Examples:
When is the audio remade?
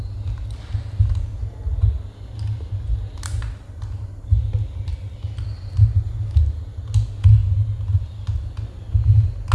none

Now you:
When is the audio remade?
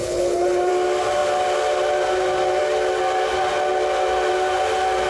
0.0-0.7 (codec, HILCodec)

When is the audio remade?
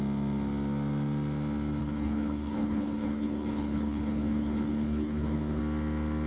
1.8-5.6 (codec, HILCodec)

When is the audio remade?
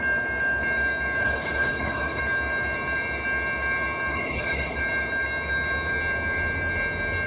1.2-2.2 (codec, HILCodec); 4.1-4.8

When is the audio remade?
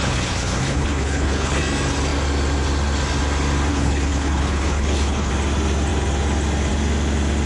0.0-1.6 (codec, HILCodec); 3.7-5.3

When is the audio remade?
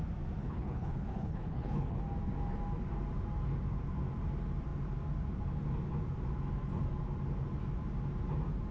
0.4-2.0 (codec, HILCodec)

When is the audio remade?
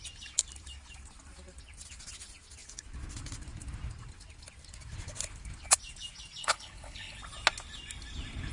6.4-7.2 (codec, HILCodec)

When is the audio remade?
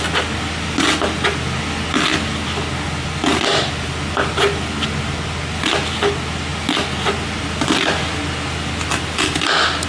none